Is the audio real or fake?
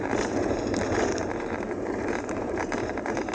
fake